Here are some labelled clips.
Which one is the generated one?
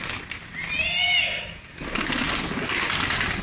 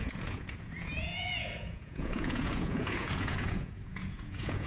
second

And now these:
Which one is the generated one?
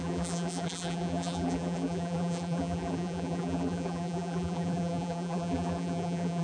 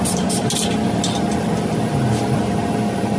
first